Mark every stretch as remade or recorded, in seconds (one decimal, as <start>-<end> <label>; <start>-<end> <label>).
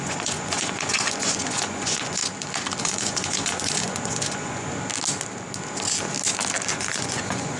0.0-2.2 remade; 2.2-2.8 recorded; 2.8-4.7 remade; 4.7-6.7 recorded; 6.7-7.6 remade